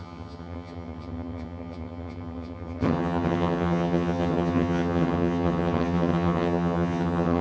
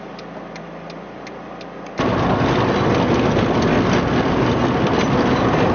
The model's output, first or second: first